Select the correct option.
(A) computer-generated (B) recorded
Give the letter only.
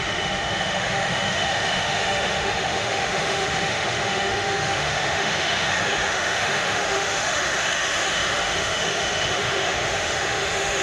A